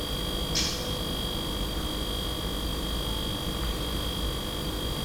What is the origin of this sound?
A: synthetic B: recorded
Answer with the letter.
B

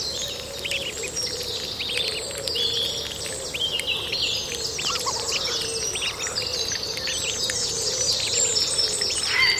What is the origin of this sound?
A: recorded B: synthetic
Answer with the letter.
A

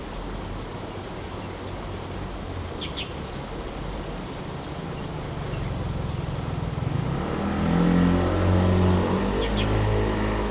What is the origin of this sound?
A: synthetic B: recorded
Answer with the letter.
B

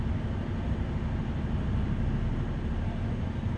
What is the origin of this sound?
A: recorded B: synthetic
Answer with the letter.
A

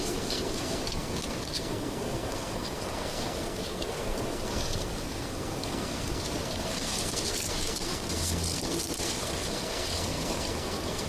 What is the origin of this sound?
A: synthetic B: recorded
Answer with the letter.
A